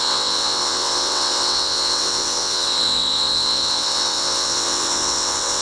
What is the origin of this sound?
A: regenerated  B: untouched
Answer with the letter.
A